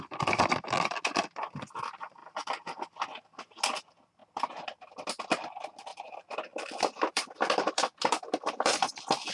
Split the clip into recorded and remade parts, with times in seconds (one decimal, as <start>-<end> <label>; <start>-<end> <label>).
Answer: 0.0-5.9 recorded; 5.9-8.9 remade; 8.9-9.3 recorded